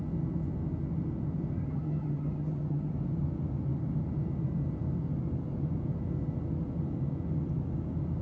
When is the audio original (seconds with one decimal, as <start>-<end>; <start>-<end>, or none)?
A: 0.0-1.6; 2.9-8.2